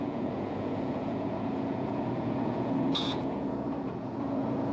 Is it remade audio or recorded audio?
remade